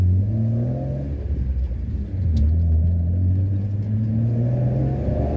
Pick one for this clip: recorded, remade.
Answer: recorded